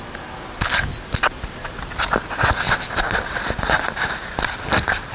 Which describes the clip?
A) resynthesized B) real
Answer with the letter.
A